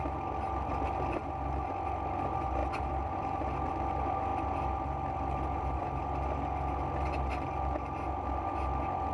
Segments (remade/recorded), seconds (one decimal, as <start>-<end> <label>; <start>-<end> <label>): 0.0-2.6 recorded; 2.6-3.7 remade; 3.7-4.3 recorded; 4.3-6.0 remade; 6.0-9.1 recorded